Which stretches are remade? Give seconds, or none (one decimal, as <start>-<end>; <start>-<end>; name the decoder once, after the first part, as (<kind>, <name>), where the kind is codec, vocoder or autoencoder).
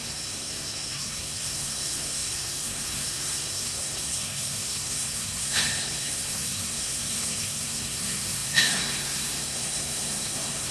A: 0.0-10.7 (codec, SNAC)